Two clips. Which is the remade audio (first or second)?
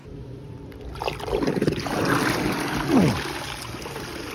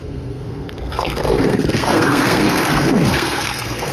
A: second